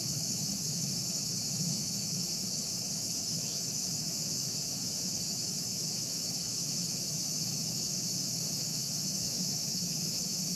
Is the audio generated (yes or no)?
yes